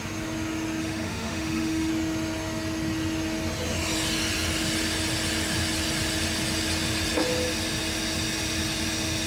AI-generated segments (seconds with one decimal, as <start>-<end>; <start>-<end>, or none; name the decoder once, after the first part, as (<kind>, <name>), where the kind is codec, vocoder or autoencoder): 0.8-1.9 (autoencoder, DAC-VAE)